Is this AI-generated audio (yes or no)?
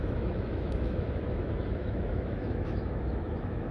yes